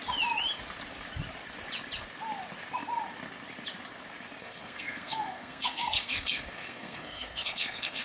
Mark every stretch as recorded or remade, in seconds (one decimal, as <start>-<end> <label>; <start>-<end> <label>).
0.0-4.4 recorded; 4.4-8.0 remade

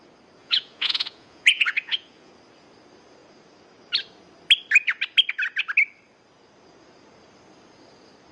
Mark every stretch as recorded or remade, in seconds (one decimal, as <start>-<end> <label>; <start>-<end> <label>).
0.0-0.4 recorded; 0.4-2.3 remade; 2.3-8.3 recorded

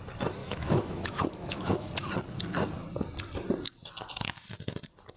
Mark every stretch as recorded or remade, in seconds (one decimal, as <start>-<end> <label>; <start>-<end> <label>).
0.0-0.4 recorded; 0.4-1.9 remade; 1.9-5.2 recorded